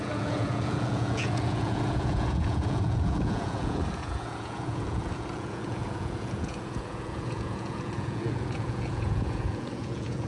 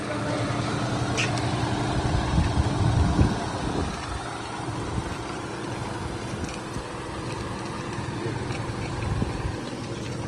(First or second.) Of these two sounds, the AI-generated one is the first